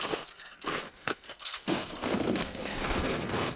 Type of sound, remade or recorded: remade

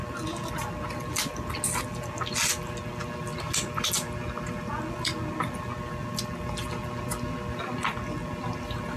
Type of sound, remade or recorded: recorded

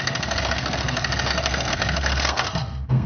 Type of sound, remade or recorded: remade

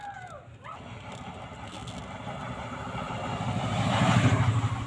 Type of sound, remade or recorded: recorded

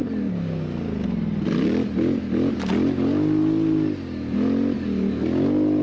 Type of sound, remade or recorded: recorded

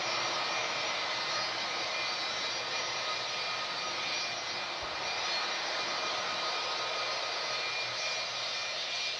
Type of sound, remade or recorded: recorded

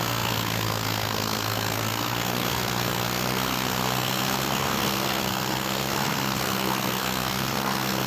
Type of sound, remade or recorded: remade